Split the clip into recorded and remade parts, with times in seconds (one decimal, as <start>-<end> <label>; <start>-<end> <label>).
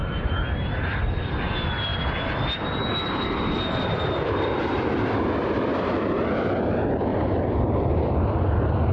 0.0-1.0 remade; 1.0-5.7 recorded; 5.7-6.3 remade; 6.3-7.1 recorded; 7.1-8.1 remade; 8.1-8.9 recorded